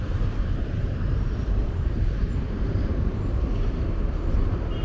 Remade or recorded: remade